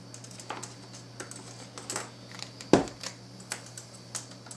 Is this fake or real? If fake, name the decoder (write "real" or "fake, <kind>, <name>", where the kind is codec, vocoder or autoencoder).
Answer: real